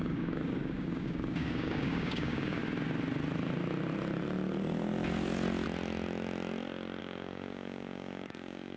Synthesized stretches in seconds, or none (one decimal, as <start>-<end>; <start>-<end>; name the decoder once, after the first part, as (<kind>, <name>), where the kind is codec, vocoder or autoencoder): 0.0-2.6 (codec, DAC); 7.0-8.8